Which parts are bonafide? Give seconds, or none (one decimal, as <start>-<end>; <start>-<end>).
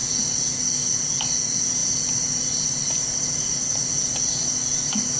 0.0-5.2